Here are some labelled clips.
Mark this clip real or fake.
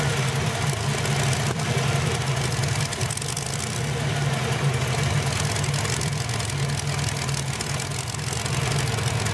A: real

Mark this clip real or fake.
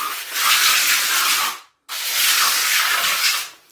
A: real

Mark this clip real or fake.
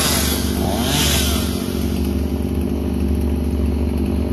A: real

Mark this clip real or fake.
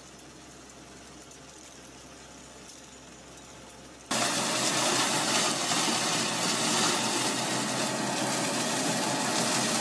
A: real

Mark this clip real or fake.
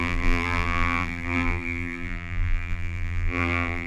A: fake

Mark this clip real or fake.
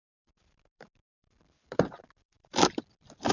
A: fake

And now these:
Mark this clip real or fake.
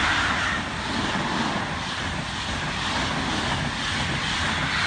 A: real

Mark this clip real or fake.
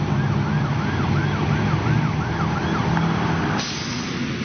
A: real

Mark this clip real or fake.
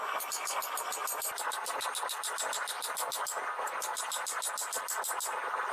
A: real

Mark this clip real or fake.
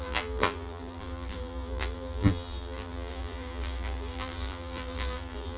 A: fake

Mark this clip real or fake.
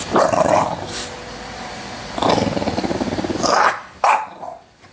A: fake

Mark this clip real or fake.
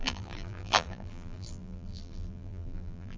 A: fake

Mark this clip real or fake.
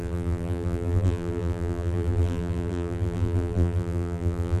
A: fake